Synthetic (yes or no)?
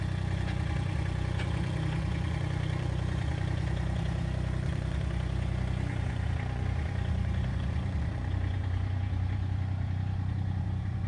yes